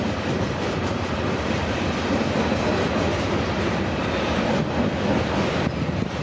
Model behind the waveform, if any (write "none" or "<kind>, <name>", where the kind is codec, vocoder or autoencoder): vocoder, BigVGAN v2